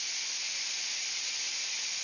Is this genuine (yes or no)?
yes